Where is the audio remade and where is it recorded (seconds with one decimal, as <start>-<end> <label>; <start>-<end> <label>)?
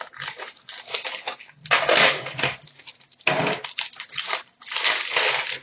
0.0-5.6 recorded